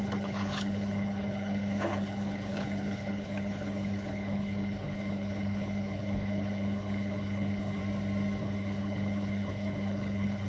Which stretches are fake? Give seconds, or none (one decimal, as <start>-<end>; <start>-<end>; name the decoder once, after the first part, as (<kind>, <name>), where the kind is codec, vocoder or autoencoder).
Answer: 0.0-7.8 (codec, HILCodec); 8.4-10.5

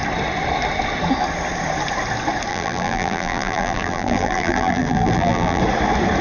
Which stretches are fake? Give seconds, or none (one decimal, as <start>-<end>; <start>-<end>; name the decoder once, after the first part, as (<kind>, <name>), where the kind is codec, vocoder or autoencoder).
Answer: 2.5-5.6 (vocoder, BigVGAN v2)

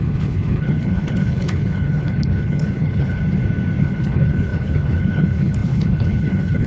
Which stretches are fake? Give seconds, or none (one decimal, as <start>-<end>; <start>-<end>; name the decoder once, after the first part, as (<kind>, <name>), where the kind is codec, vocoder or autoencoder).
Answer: 0.0-3.2 (codec, HILCodec); 3.8-6.7

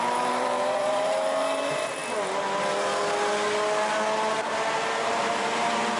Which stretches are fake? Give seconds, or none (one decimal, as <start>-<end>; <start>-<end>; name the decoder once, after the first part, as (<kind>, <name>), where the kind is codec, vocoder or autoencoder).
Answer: 0.0-2.0 (vocoder, BigVGAN v2); 5.0-6.0

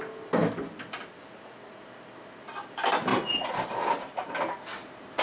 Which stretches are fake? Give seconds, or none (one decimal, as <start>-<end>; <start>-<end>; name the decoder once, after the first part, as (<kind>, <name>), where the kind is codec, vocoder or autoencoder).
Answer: 3.1-4.3 (vocoder, BigVGAN v2); 4.7-5.2

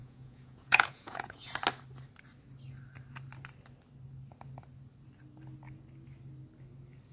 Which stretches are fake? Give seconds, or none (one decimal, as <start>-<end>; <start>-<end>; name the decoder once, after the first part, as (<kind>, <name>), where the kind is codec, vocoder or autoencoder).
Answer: 0.0-1.5 (vocoder, Vocos)